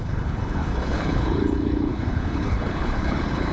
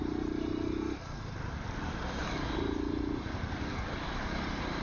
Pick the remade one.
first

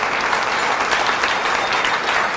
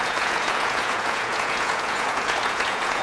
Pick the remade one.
second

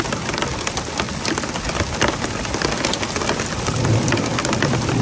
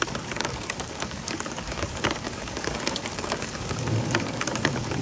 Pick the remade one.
second